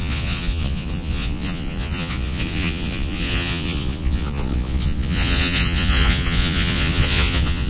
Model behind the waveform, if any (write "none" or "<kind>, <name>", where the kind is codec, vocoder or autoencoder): vocoder, Vocos